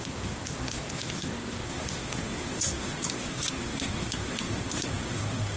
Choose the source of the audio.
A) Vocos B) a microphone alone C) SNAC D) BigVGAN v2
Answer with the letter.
C